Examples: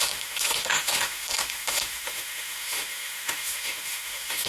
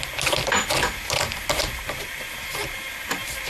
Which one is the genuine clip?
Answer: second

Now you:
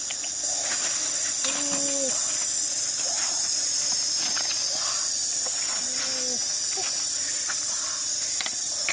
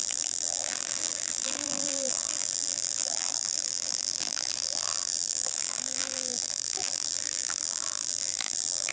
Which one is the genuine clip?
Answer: first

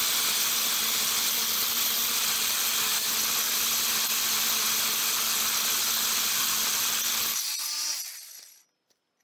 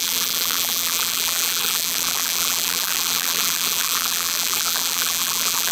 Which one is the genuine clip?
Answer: first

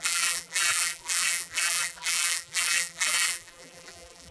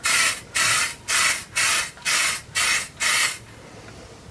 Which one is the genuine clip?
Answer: second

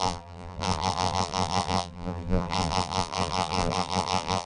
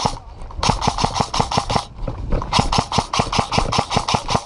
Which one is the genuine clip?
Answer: second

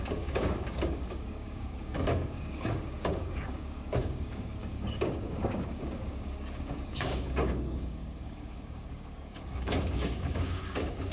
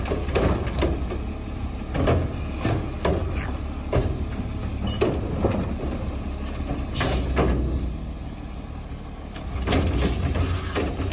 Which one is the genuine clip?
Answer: second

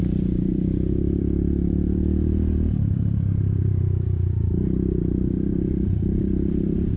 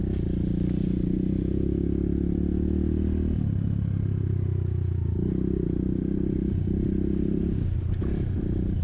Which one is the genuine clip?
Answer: second